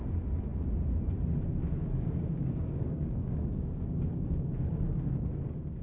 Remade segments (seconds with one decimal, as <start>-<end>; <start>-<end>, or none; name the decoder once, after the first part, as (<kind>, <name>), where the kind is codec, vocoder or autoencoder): 1.8-5.3 (codec, DAC)